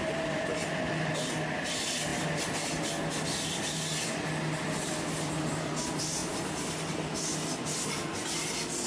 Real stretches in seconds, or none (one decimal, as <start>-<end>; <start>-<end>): 0.0-8.9

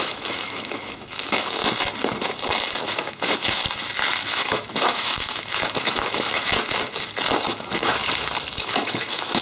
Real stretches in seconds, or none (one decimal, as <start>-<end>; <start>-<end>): 1.6-2.8; 3.6-4.2; 6.5-7.5; 8.0-8.5